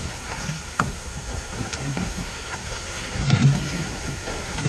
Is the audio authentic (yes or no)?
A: no